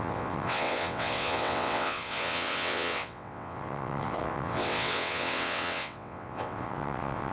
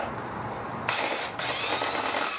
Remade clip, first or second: first